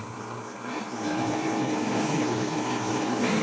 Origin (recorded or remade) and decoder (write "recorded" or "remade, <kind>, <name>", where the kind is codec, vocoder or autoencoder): remade, codec, SNAC